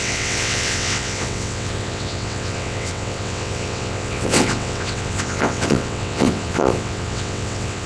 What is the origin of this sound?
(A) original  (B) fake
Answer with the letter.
B